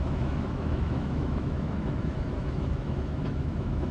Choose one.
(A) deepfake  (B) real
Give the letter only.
A